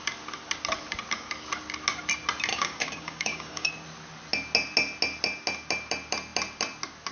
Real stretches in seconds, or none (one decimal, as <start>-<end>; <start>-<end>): 0.0-2.5; 3.7-7.1